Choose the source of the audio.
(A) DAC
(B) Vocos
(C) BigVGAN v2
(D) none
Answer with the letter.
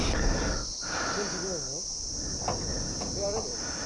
D